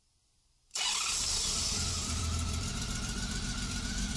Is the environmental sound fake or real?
fake